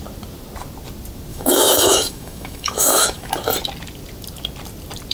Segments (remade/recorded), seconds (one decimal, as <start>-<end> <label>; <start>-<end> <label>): 0.0-1.3 recorded; 1.3-3.3 remade; 3.3-5.1 recorded